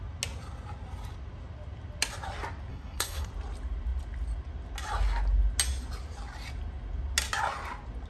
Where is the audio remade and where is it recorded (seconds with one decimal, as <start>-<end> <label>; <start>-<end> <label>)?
0.0-2.7 recorded; 2.7-3.3 remade; 3.3-8.1 recorded